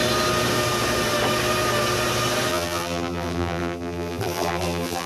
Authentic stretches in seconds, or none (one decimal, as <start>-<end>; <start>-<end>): 0.0-2.5